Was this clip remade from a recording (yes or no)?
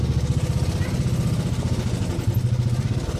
no